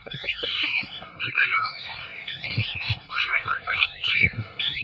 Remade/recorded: remade